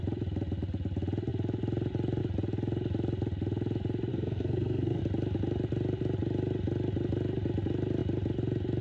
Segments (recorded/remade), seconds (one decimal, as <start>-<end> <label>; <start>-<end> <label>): 0.0-4.1 recorded; 4.1-5.0 remade; 5.0-8.8 recorded